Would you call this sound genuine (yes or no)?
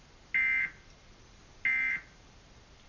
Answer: yes